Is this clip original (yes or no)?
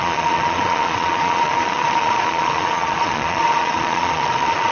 no